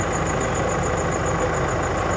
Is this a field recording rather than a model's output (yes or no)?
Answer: yes